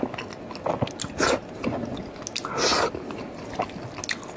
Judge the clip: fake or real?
real